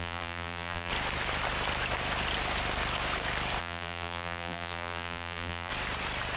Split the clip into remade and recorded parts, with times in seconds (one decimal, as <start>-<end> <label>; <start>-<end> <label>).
0.0-0.9 remade; 0.9-3.6 recorded; 3.6-5.7 remade; 5.7-6.4 recorded